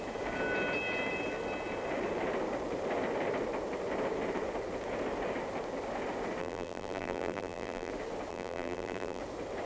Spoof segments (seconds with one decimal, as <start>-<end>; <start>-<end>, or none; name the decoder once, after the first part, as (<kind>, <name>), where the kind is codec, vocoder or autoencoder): 6.4-7.9 (vocoder, BigVGAN v2); 8.3-9.2